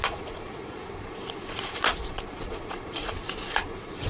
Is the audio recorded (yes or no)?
no